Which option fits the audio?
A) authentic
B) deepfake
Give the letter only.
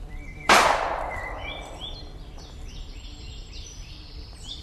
B